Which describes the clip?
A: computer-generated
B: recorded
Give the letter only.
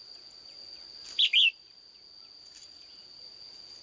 B